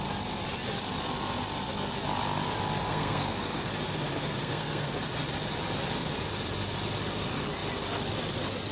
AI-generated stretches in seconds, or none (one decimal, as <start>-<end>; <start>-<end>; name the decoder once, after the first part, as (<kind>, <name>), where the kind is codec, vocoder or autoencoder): 2.9-3.7 (codec, SNAC); 4.4-5.0